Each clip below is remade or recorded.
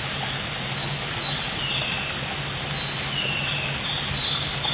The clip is recorded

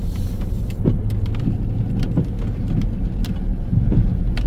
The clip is recorded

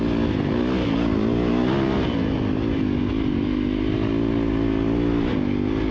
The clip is recorded